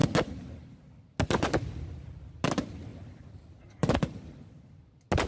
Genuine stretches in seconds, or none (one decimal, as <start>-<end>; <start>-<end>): 0.0-2.9; 4.8-5.3